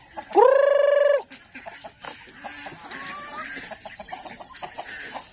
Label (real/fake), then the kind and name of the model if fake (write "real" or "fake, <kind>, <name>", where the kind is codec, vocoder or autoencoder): real